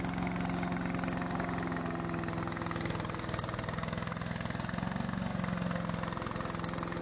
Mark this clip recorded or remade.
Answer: recorded